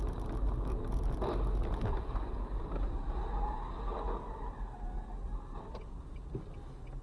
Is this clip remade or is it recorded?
recorded